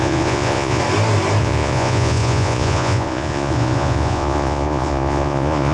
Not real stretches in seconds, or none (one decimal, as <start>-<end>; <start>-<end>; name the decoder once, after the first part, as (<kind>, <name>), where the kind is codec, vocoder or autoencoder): 0.0-0.8 (vocoder, Vocos); 1.4-5.7